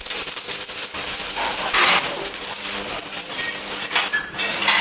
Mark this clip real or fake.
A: real